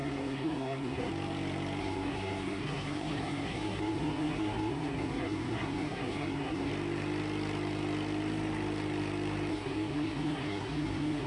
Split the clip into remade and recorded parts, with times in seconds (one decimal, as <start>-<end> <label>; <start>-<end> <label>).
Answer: 0.0-1.1 remade; 1.1-1.8 recorded; 1.8-6.7 remade; 6.7-9.5 recorded; 9.5-11.3 remade